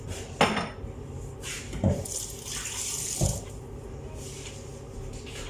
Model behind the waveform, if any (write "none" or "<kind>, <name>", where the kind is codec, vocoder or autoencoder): none